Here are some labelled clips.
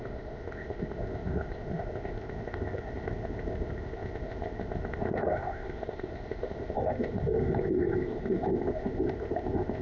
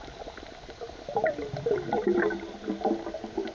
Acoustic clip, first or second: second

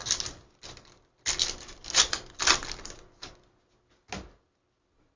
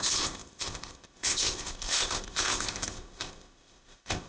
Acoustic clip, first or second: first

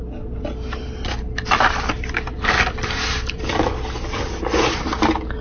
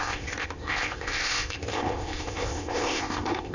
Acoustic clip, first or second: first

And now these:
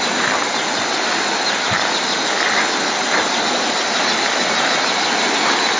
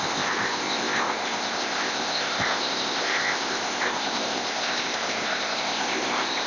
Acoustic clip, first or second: first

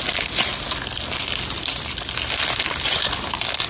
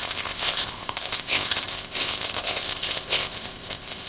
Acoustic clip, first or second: first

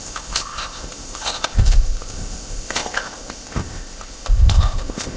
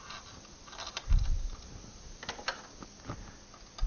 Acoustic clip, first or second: second